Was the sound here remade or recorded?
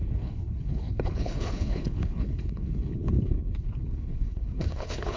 remade